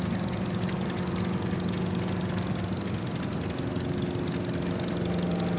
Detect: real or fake real